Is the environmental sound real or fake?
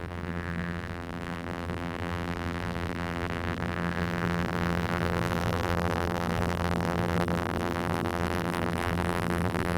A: fake